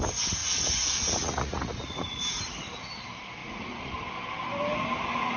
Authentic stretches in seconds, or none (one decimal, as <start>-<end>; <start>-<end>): 0.0-0.4; 2.2-3.4; 4.0-5.4

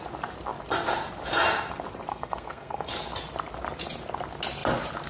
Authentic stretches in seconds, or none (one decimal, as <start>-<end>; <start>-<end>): 0.0-2.1; 2.9-5.1

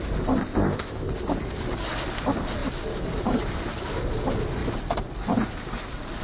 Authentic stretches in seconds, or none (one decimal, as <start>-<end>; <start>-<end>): 0.0-0.4; 1.1-6.2

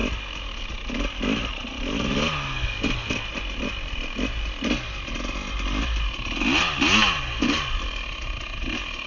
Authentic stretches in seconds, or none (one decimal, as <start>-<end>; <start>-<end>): 0.0-9.1

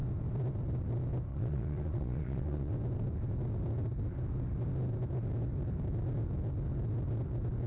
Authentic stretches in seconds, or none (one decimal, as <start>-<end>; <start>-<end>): 0.0-1.3; 2.7-7.7